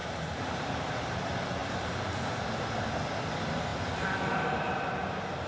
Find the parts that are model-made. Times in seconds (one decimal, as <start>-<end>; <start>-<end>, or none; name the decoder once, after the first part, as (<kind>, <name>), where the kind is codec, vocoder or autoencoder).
0.0-1.2 (vocoder, BigVGAN v2); 1.6-2.2